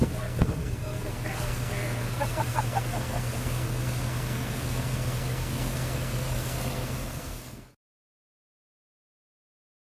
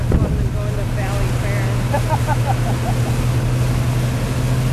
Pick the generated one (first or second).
first